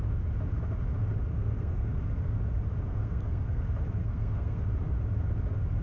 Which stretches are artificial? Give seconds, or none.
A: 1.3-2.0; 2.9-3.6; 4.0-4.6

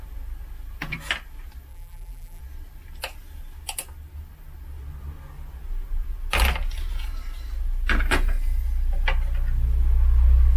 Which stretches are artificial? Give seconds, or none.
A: 1.7-2.4

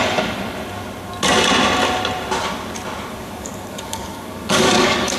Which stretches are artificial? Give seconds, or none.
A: 3.1-5.2

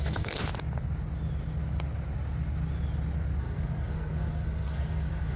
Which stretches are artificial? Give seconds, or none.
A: 0.0-0.4; 3.4-5.4

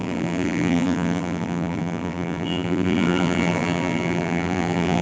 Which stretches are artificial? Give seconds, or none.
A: 0.0-5.0